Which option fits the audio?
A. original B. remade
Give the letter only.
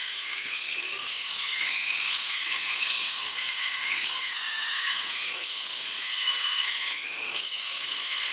B